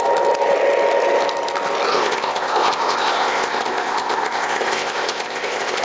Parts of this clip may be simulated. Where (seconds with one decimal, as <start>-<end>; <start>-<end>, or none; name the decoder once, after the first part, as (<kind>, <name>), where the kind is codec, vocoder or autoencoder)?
1.9-5.8 (codec, ZipCodec)